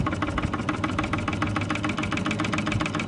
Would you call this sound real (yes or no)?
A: yes